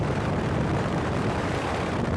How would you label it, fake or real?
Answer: fake